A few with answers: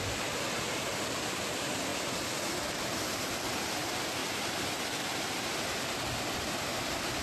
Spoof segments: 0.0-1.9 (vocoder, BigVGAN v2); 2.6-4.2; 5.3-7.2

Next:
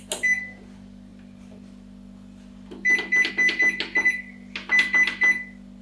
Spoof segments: none

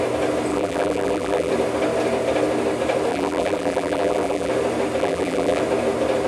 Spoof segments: 0.5-1.5 (vocoder, BigVGAN v2); 3.1-4.5; 5.0-5.6

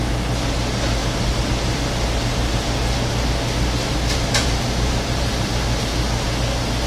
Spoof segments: 1.0-1.8 (vocoder, BigVGAN v2); 4.4-5.3

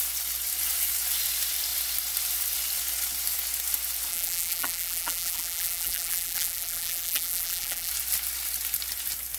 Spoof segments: 4.1-7.9 (vocoder, BigVGAN v2)